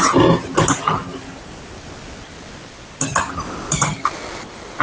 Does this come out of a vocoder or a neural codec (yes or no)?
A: no